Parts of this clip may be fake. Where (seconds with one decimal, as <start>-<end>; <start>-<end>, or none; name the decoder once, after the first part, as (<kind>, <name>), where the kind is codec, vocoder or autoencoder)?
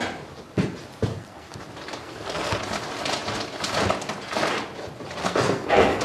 1.1-1.6 (codec, SNAC); 2.0-2.6; 5.2-6.0